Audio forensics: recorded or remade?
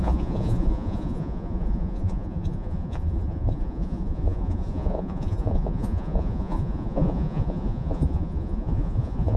remade